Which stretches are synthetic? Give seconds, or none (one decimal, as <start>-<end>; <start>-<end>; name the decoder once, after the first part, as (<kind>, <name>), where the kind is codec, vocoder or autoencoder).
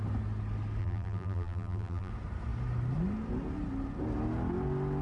0.8-2.1 (vocoder, BigVGAN v2)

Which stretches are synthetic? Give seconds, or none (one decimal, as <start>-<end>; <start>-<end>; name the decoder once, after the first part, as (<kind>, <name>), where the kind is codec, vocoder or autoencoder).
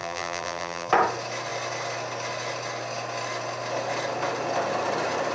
0.0-0.9 (vocoder, BigVGAN v2)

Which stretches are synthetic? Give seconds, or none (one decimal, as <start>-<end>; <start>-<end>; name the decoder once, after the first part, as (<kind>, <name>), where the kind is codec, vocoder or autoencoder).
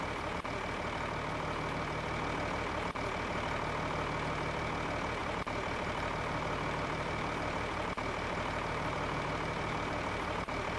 5.2-10.8 (vocoder, BigVGAN v2)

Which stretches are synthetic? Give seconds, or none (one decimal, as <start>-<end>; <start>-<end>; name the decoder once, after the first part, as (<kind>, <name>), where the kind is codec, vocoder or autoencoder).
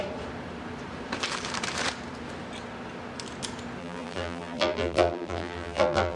3.8-6.2 (vocoder, BigVGAN v2)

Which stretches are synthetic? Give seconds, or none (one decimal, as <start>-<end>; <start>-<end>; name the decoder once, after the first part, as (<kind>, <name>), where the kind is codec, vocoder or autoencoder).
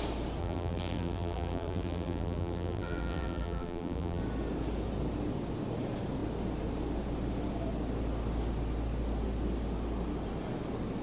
0.4-4.2 (vocoder, BigVGAN v2)